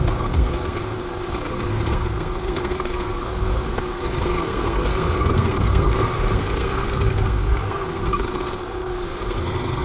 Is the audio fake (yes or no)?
yes